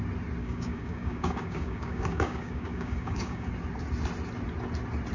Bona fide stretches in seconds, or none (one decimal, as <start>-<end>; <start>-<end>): 0.0-0.4; 3.5-5.1